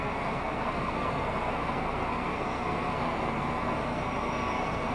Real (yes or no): no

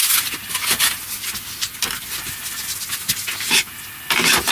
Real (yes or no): yes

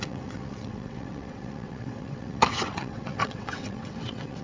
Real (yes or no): no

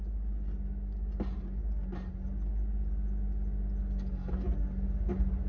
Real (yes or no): yes